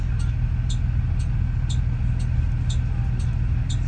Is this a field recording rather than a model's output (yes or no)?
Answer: yes